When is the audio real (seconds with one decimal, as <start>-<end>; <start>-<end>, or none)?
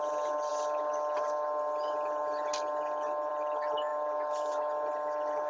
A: 0.0-5.5